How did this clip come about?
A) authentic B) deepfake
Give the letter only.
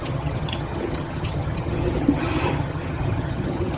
B